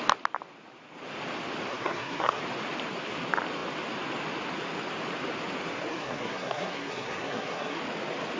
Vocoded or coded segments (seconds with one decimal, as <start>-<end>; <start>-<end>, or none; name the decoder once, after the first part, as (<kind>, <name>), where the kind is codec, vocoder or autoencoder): 1.7-2.4 (codec, SNAC); 5.9-7.8